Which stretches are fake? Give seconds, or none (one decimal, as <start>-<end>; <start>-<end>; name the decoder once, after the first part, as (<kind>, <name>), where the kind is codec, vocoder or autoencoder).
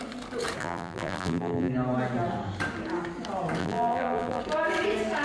0.6-1.7 (vocoder, BigVGAN v2); 3.6-4.4